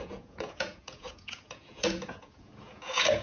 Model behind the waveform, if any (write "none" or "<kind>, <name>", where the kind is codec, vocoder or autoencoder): vocoder, Vocos